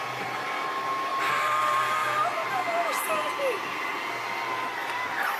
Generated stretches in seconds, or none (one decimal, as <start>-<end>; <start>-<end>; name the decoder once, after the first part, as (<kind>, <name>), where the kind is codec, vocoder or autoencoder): none